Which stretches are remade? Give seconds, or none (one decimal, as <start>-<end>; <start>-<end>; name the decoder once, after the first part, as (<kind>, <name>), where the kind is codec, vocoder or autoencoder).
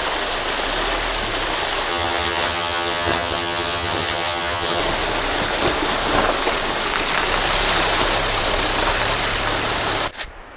1.9-4.8 (vocoder, HiFi-GAN)